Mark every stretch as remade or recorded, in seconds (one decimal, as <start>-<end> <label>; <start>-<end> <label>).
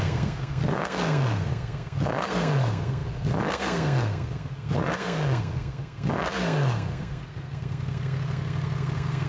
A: 0.0-9.3 remade